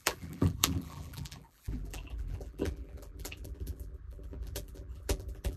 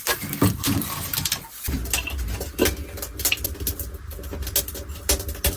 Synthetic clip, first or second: first